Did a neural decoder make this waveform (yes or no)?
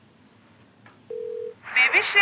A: no